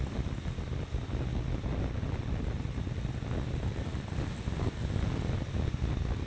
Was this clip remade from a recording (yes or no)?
no